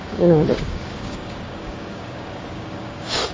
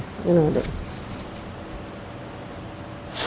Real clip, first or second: second